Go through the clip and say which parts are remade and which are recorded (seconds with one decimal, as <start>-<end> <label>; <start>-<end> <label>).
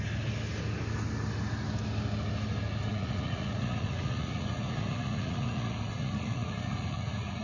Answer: 0.0-2.9 recorded; 2.9-7.4 remade